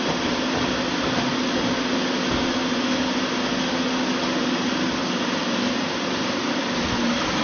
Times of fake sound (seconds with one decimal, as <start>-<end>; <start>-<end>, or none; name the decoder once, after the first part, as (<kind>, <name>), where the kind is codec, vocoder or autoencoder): 5.0-6.8 (vocoder, BigVGAN v2)